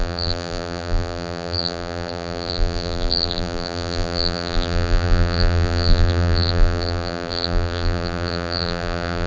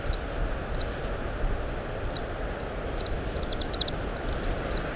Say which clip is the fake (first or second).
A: first